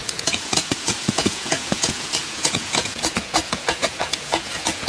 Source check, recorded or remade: remade